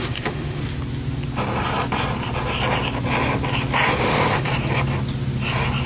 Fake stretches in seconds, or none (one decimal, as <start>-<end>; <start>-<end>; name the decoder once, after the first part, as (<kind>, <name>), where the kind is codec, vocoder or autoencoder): 0.0-0.6 (autoencoder, DAC-VAE); 4.0-4.5